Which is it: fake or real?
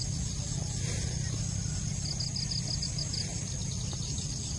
real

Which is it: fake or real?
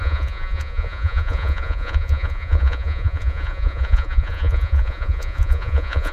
fake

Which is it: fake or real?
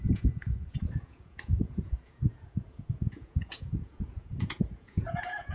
fake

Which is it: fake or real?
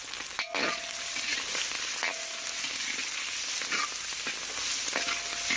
real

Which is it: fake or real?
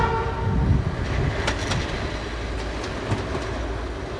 real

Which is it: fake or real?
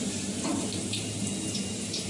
real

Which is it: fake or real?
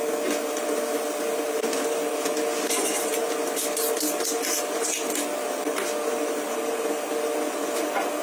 real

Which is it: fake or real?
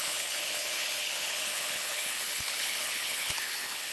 fake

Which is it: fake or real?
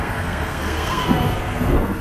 fake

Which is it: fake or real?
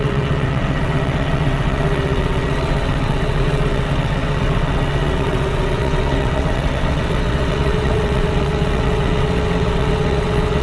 fake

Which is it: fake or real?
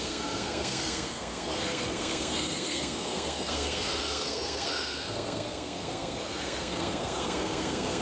fake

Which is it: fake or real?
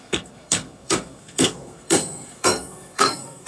fake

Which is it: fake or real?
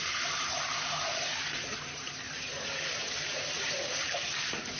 fake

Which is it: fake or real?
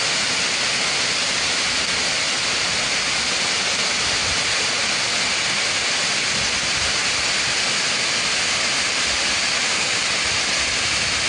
real